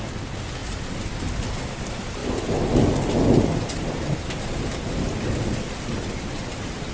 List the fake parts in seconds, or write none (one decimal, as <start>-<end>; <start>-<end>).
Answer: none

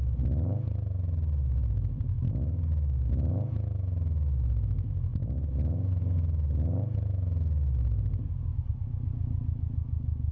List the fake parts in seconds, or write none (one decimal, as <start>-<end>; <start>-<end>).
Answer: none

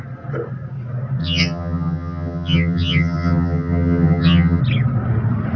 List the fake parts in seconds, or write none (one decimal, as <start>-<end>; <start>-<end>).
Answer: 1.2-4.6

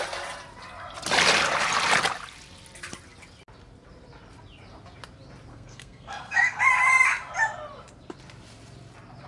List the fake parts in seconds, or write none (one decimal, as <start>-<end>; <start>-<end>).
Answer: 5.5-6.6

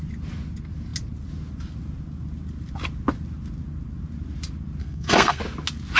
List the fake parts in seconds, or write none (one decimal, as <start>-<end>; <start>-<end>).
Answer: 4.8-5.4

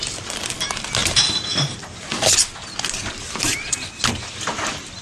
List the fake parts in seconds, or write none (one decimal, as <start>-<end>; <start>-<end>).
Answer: none